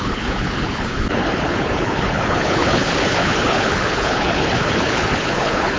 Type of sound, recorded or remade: remade